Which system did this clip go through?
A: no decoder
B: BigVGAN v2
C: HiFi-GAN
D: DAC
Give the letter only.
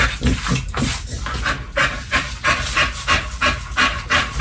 A